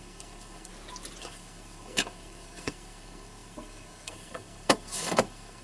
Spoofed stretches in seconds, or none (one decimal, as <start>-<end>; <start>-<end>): 0.0-0.7; 1.2-5.6